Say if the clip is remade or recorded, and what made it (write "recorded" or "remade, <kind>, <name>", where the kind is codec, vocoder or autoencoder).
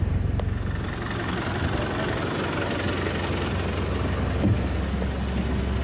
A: recorded